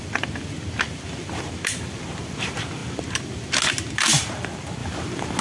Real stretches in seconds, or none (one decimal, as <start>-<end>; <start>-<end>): 0.0-5.4